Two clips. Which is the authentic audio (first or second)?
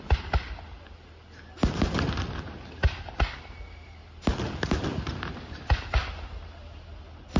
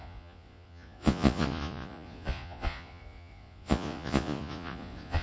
first